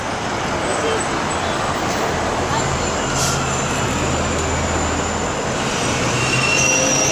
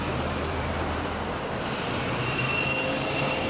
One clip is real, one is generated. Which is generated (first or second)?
second